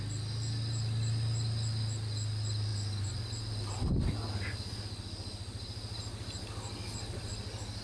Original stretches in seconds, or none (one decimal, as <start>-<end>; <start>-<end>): 0.0-7.8